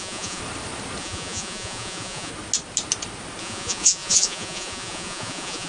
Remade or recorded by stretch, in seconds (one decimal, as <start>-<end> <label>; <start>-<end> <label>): 0.0-0.4 remade; 0.4-1.0 recorded; 1.0-2.3 remade; 2.3-3.4 recorded; 3.4-5.7 remade